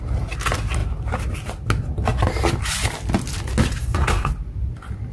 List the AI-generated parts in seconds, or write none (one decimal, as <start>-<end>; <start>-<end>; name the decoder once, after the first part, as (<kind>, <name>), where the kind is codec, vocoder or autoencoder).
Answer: 3.8-4.3 (codec, SNAC)